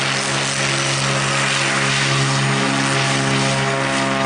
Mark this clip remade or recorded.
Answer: recorded